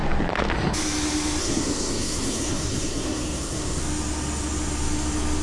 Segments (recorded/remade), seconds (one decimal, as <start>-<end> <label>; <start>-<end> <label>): 0.0-1.4 recorded; 1.4-3.8 remade; 3.8-5.4 recorded